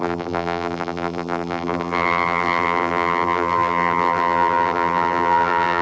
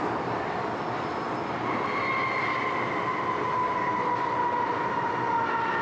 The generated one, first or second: first